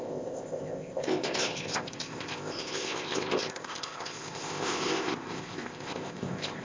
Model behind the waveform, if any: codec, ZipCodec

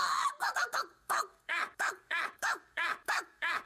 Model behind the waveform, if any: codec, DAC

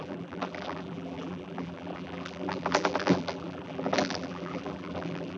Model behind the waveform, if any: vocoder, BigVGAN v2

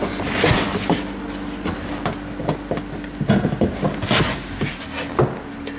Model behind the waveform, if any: none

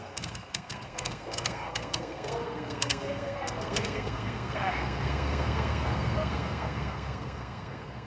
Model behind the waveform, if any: codec, SNAC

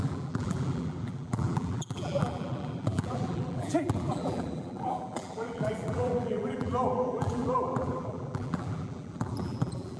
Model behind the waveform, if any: vocoder, BigVGAN v2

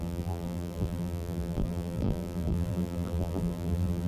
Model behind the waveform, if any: vocoder, BigVGAN v2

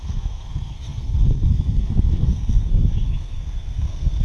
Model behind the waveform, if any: codec, SNAC